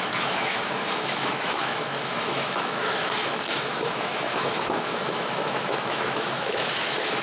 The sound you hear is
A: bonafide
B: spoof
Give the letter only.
B